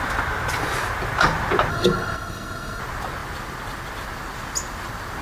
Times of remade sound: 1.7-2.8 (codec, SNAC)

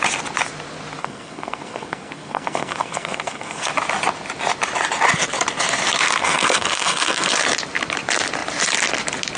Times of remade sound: 1.0-3.7 (codec, SNAC); 6.2-7.3

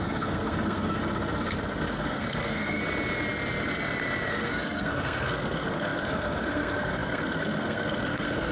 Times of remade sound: 0.0-1.0 (codec, SNAC); 1.9-2.8; 4.3-8.5

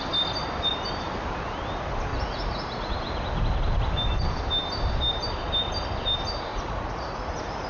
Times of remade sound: 2.1-2.9 (vocoder, Vocos); 6.5-7.3

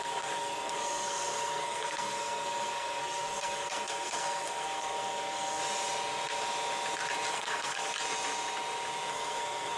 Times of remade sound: 0.0-5.6 (codec, SNAC); 7.3-7.9; 9.1-9.8

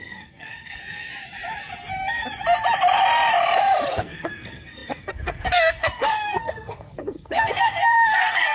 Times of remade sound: 0.0-1.1 (codec, SNAC); 3.9-8.5

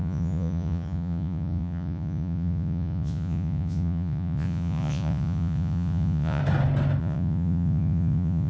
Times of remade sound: 0.0-6.4 (vocoder, Vocos); 7.0-8.5